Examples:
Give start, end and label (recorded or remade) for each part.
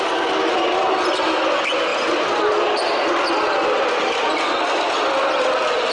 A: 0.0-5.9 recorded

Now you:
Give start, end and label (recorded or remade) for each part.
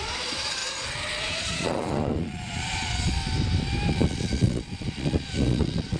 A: 0.0-0.6 remade; 0.6-1.2 recorded; 1.2-3.2 remade; 3.2-3.9 recorded; 3.9-6.0 remade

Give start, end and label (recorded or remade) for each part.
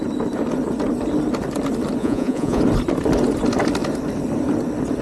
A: 0.0-2.0 recorded; 2.0-2.6 remade; 2.6-5.0 recorded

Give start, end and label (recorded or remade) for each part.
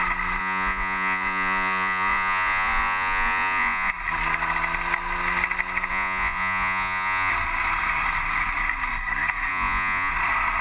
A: 0.0-0.4 recorded; 0.4-3.9 remade; 3.9-5.9 recorded; 5.9-7.3 remade; 7.3-9.5 recorded; 9.5-10.1 remade; 10.1-10.6 recorded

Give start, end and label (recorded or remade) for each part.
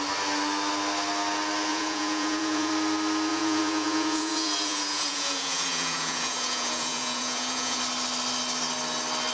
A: 0.0-1.7 recorded; 1.7-2.7 remade; 2.7-3.3 recorded; 3.3-7.8 remade; 7.8-9.3 recorded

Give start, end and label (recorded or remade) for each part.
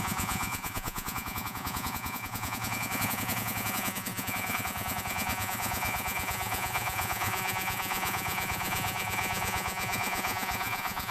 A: 0.0-11.1 remade